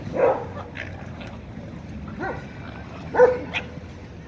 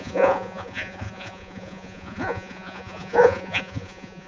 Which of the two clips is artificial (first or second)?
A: second